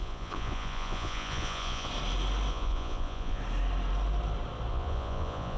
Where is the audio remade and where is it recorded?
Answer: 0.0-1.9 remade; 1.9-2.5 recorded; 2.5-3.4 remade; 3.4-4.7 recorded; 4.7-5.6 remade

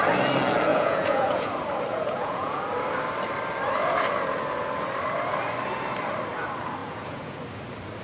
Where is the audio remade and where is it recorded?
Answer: 0.0-0.7 recorded; 0.7-1.5 remade; 1.5-1.9 recorded; 1.9-2.6 remade; 2.6-6.8 recorded; 6.8-7.4 remade; 7.4-8.0 recorded

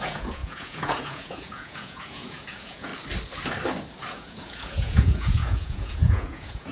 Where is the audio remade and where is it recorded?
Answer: 0.0-2.9 remade; 2.9-4.1 recorded; 4.1-6.7 remade

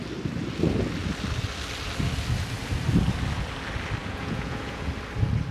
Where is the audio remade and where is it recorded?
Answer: 0.0-4.0 recorded; 4.0-4.9 remade; 4.9-5.5 recorded

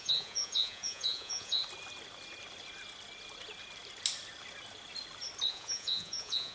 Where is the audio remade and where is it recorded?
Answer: 0.0-1.6 remade; 1.6-5.5 recorded; 5.5-6.5 remade

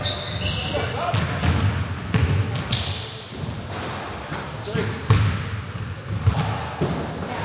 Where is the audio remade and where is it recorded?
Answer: 0.0-7.4 recorded

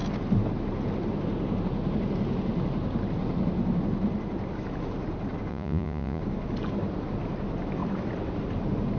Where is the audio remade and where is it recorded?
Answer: 0.0-5.5 recorded; 5.5-6.2 remade; 6.2-9.0 recorded